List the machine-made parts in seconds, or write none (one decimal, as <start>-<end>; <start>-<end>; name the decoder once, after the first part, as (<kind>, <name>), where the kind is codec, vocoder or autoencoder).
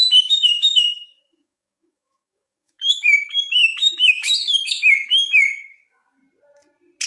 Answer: 0.0-6.2 (codec, DAC)